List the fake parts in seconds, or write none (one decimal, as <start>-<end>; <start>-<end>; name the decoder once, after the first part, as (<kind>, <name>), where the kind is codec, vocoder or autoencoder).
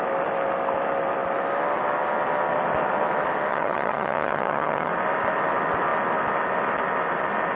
3.5-4.9 (vocoder, HiFi-GAN)